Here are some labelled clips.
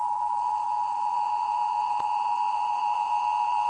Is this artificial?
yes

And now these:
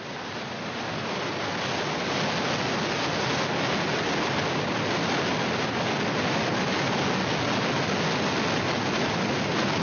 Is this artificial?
no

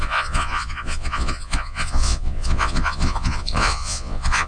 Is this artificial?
yes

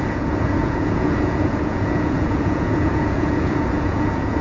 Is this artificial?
yes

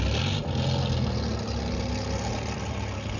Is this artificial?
no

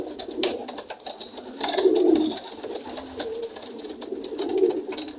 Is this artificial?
no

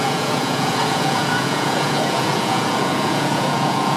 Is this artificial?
yes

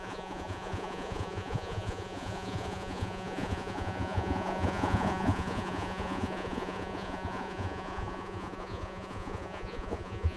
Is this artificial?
yes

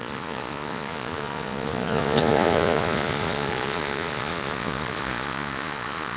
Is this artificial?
yes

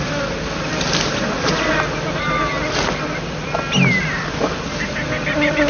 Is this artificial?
no